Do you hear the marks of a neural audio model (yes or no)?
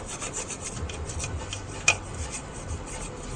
no